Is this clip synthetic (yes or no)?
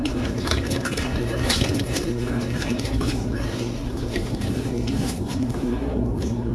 yes